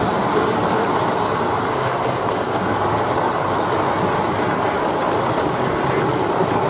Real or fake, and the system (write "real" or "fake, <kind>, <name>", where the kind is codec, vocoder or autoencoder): real